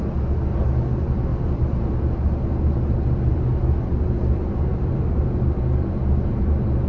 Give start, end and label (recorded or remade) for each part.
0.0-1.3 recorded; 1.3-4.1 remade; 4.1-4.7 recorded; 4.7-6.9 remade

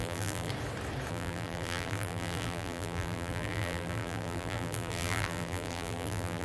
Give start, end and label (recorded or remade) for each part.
0.0-0.5 remade; 0.5-1.1 recorded; 1.1-6.4 remade

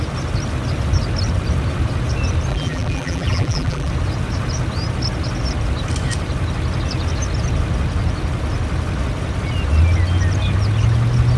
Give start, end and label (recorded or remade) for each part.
0.0-2.5 recorded; 2.5-3.9 remade; 3.9-11.4 recorded

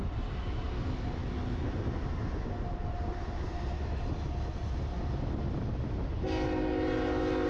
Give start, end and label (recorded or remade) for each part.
0.0-7.5 recorded